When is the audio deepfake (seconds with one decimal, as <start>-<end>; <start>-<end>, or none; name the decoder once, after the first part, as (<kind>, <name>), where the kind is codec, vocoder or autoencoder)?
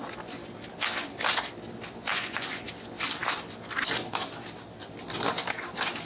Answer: 2.1-2.6 (vocoder, Vocos)